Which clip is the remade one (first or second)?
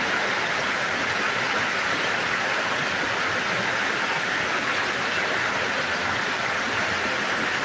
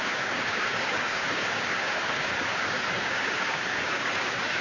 second